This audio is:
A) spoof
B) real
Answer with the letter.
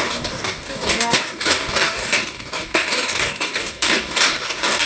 A